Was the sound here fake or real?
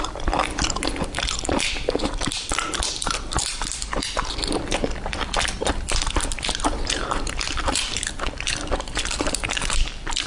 fake